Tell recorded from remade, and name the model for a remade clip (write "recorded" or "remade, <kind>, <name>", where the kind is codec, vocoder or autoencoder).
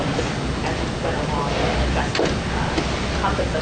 recorded